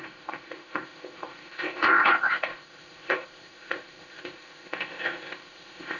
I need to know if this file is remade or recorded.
remade